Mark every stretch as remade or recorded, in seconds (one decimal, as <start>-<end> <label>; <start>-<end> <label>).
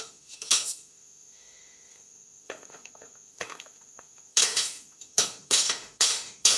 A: 0.0-6.6 remade